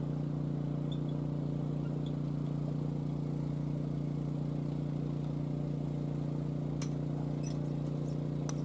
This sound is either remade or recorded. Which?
recorded